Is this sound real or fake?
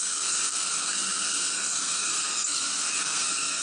fake